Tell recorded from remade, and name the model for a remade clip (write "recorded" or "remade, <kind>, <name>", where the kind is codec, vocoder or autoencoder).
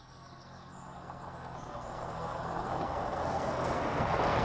remade, codec, SNAC